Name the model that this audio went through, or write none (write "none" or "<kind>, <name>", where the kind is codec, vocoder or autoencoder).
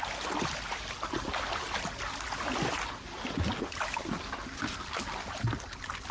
none